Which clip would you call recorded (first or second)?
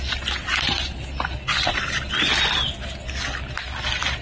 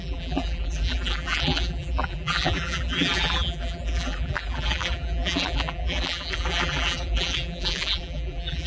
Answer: first